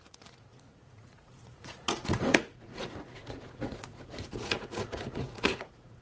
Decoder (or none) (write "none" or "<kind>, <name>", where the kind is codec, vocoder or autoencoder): vocoder, Vocos